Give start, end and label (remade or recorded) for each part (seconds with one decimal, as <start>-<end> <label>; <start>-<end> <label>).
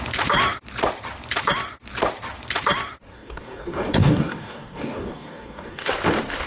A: 0.0-3.1 recorded; 3.1-5.9 remade; 5.9-6.5 recorded